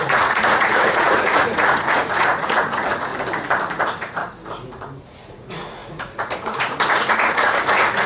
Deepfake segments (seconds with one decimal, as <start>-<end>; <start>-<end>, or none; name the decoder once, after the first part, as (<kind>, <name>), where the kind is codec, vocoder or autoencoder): 0.0-3.1 (vocoder, Vocos); 3.7-4.2; 5.0-8.1